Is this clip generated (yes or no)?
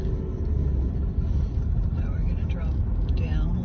no